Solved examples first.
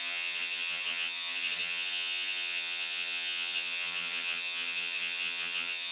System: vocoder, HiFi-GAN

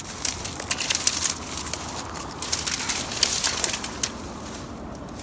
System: none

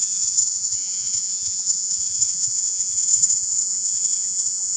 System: vocoder, Vocos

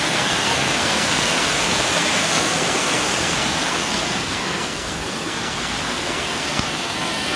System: codec, SNAC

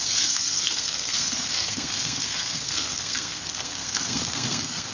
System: codec, SNAC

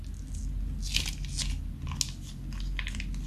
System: none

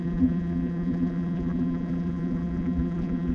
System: vocoder, BigVGAN v2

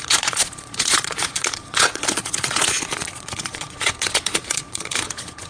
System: vocoder, Vocos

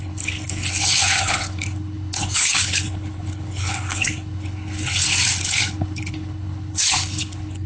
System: codec, HILCodec